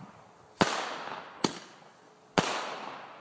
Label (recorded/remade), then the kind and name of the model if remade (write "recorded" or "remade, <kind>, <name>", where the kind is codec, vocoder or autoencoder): recorded